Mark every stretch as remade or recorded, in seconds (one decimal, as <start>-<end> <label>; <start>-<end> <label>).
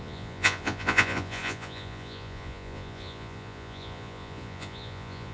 0.0-5.3 remade